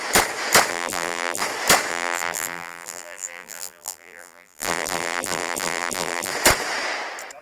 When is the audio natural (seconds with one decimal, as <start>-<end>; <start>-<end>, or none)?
0.0-0.7; 1.4-1.9; 6.3-7.4